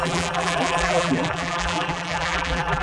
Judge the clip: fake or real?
fake